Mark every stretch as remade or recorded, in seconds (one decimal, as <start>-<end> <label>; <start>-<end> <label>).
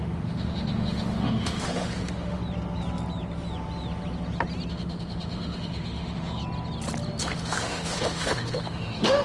0.0-2.4 remade; 2.4-4.7 recorded; 4.7-6.4 remade; 6.4-7.2 recorded; 7.2-9.2 remade